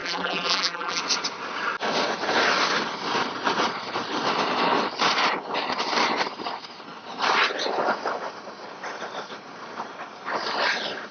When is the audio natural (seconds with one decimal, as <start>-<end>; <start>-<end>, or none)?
1.0-11.1